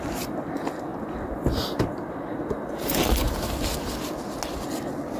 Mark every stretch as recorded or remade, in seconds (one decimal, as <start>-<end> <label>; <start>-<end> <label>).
0.0-5.2 recorded